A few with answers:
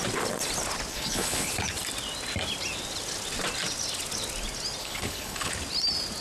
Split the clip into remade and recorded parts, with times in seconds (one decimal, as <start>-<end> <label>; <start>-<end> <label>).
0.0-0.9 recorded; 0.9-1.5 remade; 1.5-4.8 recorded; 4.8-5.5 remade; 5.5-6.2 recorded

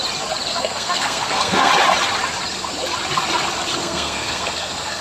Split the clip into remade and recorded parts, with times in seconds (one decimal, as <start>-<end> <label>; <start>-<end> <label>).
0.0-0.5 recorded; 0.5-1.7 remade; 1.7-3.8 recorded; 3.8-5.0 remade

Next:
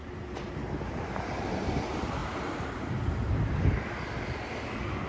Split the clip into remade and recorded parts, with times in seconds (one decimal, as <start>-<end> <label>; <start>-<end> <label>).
0.0-5.1 recorded

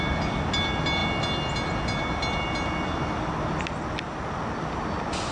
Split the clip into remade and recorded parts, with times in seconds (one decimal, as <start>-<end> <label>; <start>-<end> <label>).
0.0-5.3 recorded

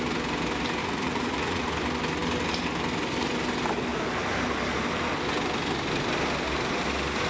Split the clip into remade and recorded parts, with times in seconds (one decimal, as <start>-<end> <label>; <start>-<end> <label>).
0.0-0.8 recorded; 0.8-1.6 remade; 1.6-7.3 recorded

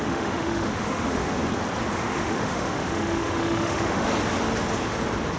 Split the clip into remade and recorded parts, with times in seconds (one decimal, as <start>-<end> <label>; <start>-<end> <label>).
0.0-1.4 remade; 1.4-2.0 recorded; 2.0-4.1 remade; 4.1-5.4 recorded